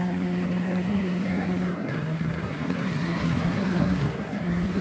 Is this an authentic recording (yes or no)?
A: no